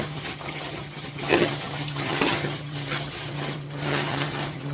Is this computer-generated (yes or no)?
yes